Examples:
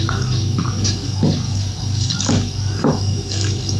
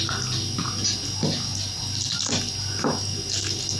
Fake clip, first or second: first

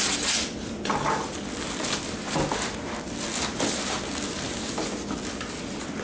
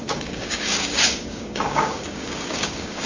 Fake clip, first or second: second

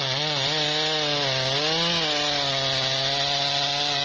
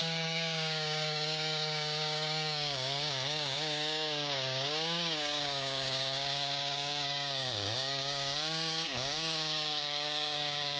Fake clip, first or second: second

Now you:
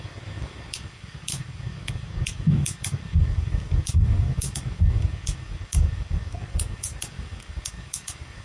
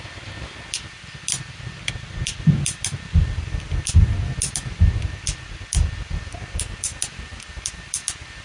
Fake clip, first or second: first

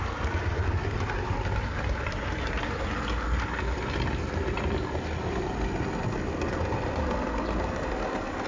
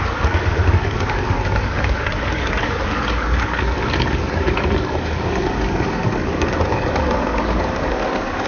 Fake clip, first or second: second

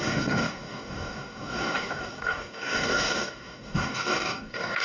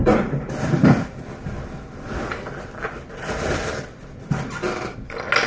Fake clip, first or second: first